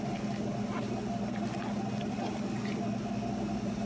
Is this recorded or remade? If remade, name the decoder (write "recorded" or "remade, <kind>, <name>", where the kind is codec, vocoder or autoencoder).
recorded